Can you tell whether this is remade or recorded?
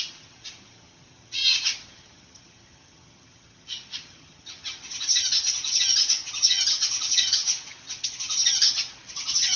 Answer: remade